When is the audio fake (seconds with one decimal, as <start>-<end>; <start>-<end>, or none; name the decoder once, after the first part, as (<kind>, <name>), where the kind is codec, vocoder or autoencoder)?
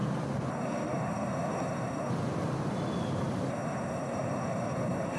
0.5-2.1 (codec, SNAC); 3.5-5.2